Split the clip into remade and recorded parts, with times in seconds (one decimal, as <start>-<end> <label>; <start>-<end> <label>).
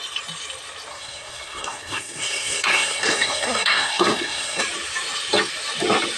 0.0-0.9 recorded; 0.9-4.6 remade; 4.6-6.2 recorded